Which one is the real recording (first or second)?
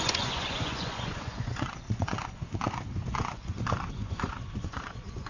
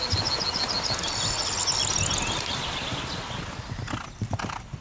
second